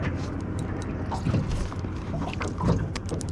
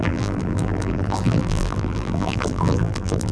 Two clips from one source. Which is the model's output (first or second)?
second